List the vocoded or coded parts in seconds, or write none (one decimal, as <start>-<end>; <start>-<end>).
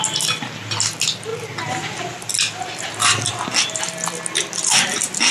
none